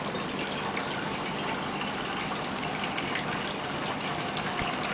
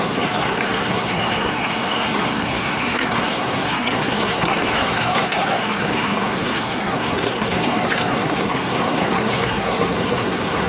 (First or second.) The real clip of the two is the first